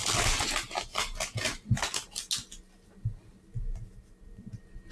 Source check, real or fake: real